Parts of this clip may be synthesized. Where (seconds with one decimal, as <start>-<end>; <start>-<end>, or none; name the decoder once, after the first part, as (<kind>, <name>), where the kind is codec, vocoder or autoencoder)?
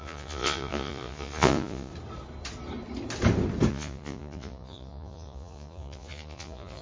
0.0-1.9 (vocoder, Vocos); 3.7-6.8